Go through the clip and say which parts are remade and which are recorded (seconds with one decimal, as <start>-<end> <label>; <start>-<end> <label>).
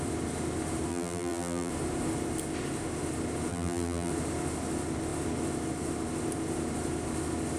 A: 0.0-0.9 recorded; 0.9-1.7 remade; 1.7-3.5 recorded; 3.5-4.1 remade; 4.1-7.6 recorded